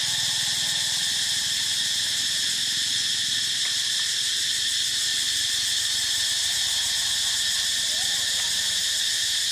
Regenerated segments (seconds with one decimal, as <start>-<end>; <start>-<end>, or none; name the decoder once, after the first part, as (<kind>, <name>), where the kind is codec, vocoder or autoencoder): none